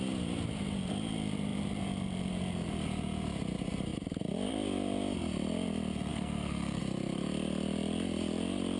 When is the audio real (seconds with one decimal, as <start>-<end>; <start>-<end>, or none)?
0.0-6.1; 6.8-8.8